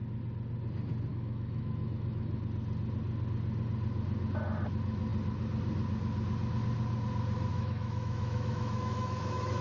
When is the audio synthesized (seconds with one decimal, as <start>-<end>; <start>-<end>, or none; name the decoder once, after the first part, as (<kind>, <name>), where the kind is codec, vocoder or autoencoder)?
1.1-2.4 (autoencoder, DAC-VAE); 7.5-9.6